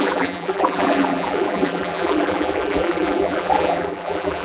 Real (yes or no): no